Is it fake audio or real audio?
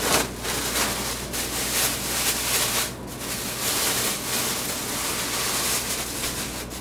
real